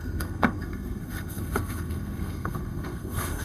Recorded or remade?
remade